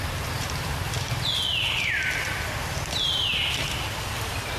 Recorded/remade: remade